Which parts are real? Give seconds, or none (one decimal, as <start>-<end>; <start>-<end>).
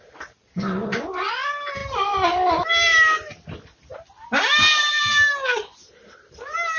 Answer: 0.0-6.8